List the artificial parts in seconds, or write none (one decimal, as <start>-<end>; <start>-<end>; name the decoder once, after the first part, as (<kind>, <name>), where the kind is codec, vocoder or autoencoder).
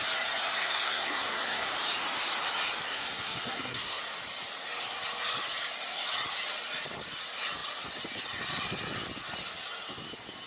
0.6-1.7 (codec, SNAC); 2.9-4.0